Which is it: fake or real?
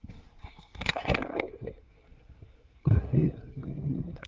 fake